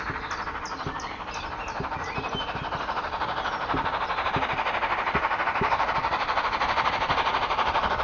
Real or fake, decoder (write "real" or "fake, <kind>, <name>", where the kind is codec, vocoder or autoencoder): real